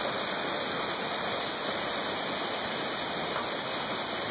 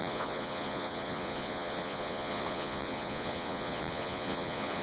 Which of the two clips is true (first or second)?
first